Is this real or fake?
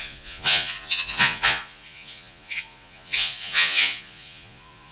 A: fake